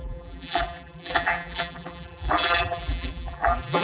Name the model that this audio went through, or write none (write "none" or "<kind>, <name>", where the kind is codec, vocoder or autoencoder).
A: vocoder, BigVGAN v2